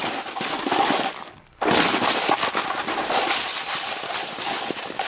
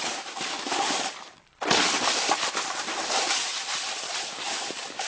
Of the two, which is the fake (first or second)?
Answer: second